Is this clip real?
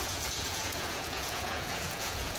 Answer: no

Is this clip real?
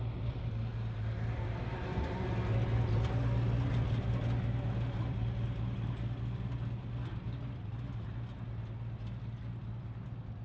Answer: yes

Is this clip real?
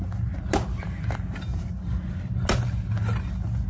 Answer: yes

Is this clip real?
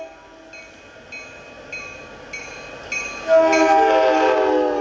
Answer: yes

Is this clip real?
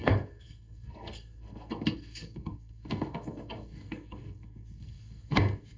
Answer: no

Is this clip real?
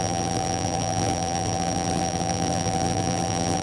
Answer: no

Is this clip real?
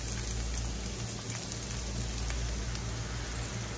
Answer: yes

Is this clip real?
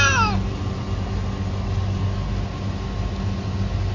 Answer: yes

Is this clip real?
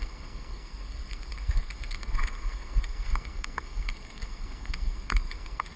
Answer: no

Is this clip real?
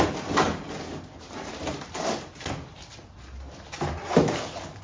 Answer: yes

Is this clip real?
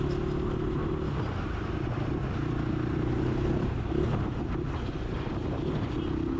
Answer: yes